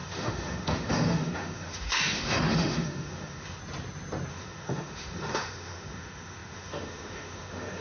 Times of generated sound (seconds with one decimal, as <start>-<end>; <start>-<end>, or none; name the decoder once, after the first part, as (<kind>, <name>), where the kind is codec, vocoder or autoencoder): 0.0-3.6 (autoencoder, DAC-VAE); 4.3-7.8